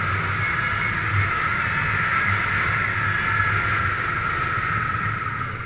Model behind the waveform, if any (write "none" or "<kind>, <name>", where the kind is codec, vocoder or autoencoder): none